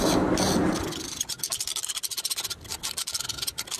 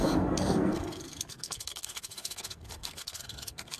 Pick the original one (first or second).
first